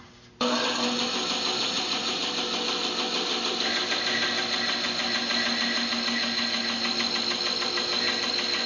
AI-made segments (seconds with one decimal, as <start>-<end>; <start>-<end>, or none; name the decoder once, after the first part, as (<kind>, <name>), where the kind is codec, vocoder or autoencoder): 1.6-2.2 (vocoder, Vocos)